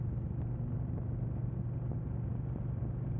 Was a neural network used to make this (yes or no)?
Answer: no